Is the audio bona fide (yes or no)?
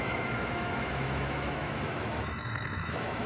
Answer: no